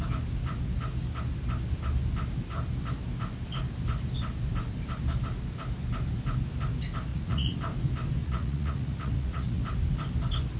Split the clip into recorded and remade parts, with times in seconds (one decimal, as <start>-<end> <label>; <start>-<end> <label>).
0.0-7.1 recorded; 7.1-7.6 remade; 7.6-8.2 recorded; 8.2-9.6 remade; 9.6-10.6 recorded